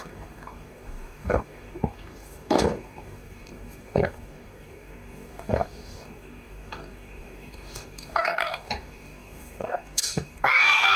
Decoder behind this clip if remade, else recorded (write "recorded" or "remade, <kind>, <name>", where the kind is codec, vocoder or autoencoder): remade, codec, DAC